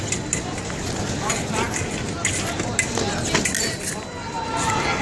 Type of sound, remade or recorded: recorded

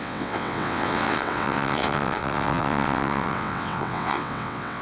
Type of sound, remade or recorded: remade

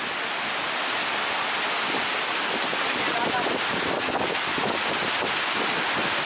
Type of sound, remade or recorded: recorded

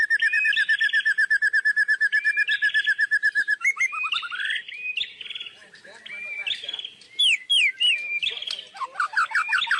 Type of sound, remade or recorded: remade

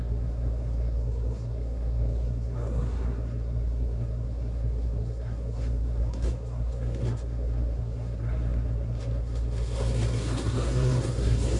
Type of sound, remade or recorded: remade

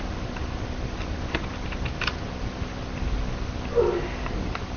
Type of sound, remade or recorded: recorded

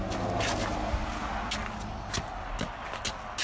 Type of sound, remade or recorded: recorded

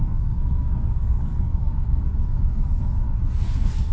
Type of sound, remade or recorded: remade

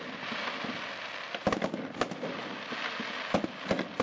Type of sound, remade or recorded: recorded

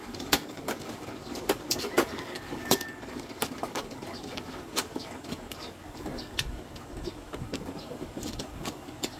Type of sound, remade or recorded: remade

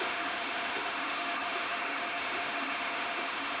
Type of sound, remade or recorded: remade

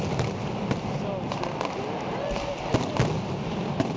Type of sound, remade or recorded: recorded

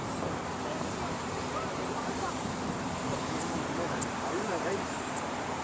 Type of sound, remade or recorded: remade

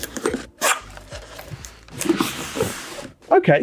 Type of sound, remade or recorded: remade